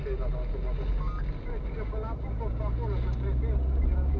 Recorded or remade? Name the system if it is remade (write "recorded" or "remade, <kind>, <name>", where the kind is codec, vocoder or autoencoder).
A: recorded